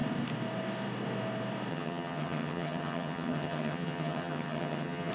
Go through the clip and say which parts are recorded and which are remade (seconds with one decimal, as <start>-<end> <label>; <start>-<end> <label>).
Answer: 0.0-1.7 recorded; 1.7-5.1 remade